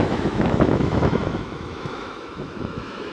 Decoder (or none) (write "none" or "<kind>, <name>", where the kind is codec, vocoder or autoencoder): autoencoder, DAC-VAE